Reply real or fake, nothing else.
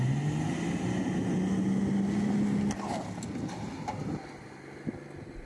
real